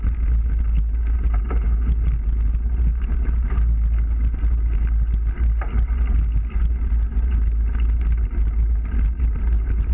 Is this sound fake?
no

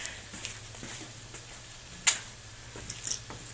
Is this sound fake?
no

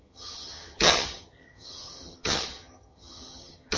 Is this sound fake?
yes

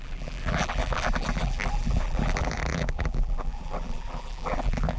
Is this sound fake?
yes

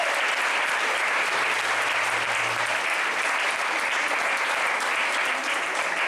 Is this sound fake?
no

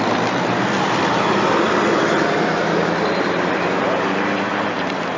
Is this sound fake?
yes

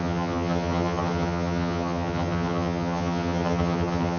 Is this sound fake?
yes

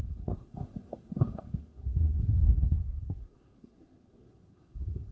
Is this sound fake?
yes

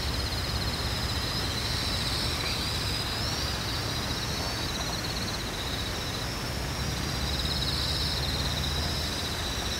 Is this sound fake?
no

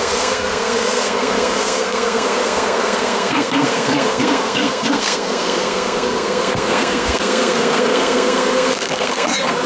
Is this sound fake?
yes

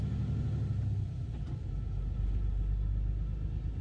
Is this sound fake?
no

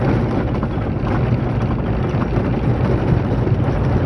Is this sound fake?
no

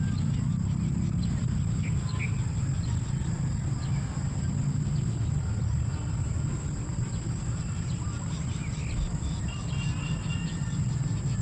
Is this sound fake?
no